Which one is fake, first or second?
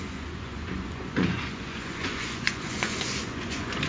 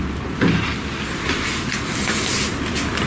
first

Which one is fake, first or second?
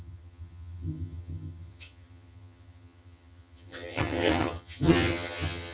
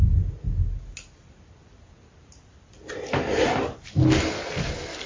first